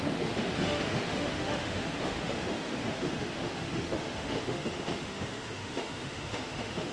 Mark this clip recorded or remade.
remade